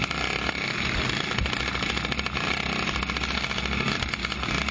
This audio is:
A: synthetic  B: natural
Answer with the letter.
B